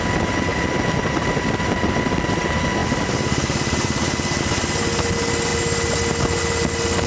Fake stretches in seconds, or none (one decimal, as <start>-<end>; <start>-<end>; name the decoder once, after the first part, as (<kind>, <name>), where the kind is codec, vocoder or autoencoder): 2.8-4.4 (vocoder, BigVGAN v2)